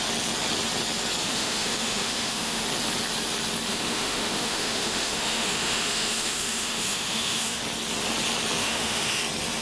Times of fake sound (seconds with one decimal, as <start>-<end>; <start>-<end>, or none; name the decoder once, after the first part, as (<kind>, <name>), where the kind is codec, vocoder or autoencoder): 1.2-2.6 (autoencoder, DAC-VAE); 3.7-7.6; 8.6-9.2